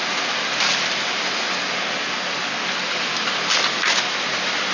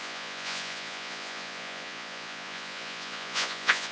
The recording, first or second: first